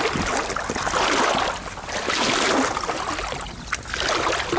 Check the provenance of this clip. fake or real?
real